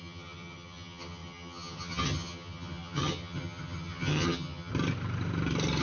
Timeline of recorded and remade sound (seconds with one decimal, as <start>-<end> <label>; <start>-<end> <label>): 0.0-4.7 remade; 4.7-5.8 recorded

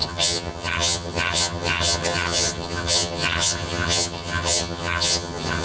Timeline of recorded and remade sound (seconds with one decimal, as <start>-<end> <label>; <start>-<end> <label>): 0.0-5.6 remade

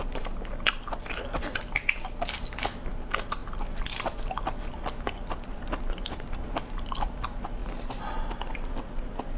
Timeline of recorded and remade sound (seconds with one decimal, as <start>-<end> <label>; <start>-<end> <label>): 0.0-9.4 recorded

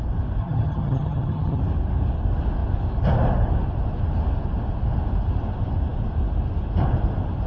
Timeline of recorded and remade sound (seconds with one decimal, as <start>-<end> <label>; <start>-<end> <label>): 0.0-0.4 recorded; 0.4-1.6 remade; 1.6-7.5 recorded

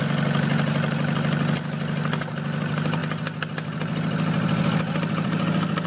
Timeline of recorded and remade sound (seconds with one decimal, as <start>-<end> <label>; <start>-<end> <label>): 0.0-5.9 recorded

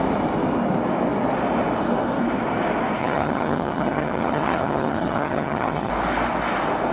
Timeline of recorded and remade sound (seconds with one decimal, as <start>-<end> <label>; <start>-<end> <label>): 0.0-3.0 recorded; 3.0-5.9 remade; 5.9-6.9 recorded

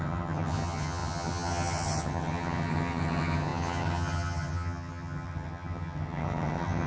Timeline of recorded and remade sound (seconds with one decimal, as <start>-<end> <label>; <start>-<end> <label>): 0.0-6.9 remade